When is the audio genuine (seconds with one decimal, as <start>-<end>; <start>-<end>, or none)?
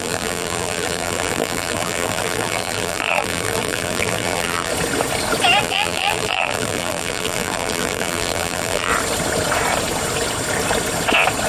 4.7-5.6; 8.9-11.5